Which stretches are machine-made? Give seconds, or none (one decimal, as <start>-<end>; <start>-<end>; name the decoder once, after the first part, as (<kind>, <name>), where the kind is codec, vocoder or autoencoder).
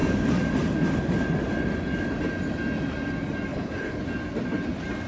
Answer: 3.5-4.0 (codec, HILCodec)